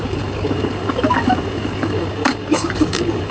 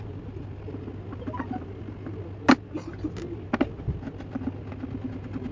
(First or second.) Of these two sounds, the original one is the second